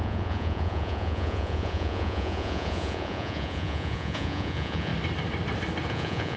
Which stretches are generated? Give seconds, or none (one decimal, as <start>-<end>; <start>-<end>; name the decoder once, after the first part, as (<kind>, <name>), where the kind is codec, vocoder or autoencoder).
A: 0.0-4.9 (vocoder, Vocos); 5.9-6.4